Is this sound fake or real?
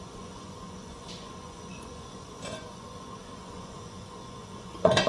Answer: fake